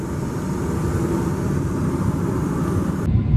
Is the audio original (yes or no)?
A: yes